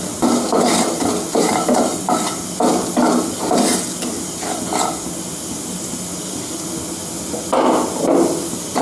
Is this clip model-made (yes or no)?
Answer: no